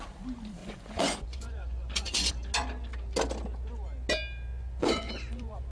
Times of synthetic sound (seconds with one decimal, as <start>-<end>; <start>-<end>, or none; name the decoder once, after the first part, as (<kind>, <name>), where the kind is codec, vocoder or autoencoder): 0.6-2.3 (vocoder, Vocos); 4.5-5.7

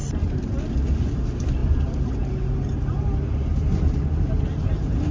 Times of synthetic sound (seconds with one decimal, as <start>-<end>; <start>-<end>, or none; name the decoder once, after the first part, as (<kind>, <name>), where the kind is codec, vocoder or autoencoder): 0.0-0.5 (vocoder, BigVGAN v2); 3.5-4.3

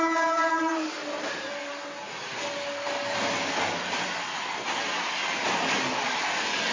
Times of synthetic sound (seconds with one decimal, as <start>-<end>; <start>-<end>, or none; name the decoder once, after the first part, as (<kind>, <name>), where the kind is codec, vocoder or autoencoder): none

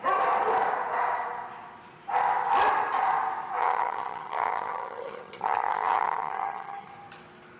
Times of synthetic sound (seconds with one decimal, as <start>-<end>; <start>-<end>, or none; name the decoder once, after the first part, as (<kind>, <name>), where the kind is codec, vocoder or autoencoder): 3.6-6.9 (vocoder, HiFi-GAN)

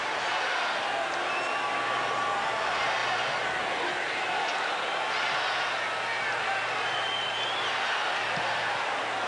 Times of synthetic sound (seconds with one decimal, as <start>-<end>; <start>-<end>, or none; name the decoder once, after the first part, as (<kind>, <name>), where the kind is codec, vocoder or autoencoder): 0.0-0.8 (vocoder, BigVGAN v2)

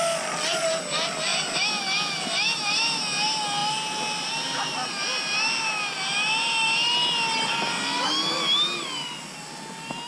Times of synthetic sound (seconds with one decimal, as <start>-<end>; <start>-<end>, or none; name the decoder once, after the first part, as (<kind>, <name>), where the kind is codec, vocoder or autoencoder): none

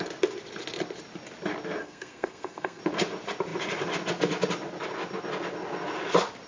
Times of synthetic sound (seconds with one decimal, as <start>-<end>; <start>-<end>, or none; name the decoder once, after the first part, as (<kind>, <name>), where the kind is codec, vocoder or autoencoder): 1.8-2.8 (codec, SNAC)

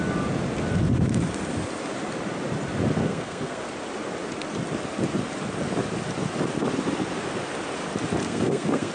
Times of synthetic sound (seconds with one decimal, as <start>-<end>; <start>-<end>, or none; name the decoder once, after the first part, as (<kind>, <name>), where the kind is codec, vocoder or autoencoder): 3.0-3.6 (codec, SNAC); 8.2-8.9